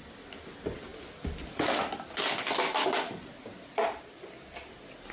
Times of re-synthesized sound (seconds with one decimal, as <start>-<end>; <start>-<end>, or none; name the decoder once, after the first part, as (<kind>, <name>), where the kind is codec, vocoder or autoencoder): none